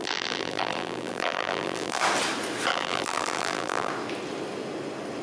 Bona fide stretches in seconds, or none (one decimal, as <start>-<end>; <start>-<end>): 2.0-2.7; 3.9-5.2